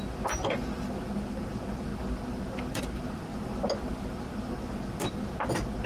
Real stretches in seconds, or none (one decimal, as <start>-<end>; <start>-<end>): 0.0-5.9